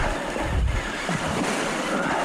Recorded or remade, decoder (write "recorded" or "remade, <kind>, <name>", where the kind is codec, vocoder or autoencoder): recorded